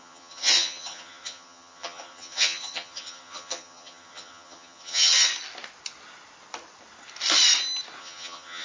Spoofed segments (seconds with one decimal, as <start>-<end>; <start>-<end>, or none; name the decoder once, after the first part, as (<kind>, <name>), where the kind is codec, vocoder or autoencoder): 0.0-5.3 (vocoder, HiFi-GAN); 8.0-8.6